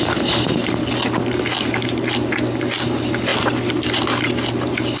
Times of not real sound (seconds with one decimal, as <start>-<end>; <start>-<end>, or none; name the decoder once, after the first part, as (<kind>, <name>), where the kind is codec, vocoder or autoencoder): none